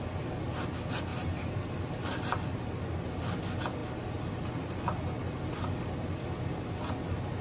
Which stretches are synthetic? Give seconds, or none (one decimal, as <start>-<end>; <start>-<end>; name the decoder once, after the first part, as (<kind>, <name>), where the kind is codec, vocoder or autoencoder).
none